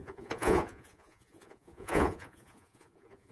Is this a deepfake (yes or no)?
yes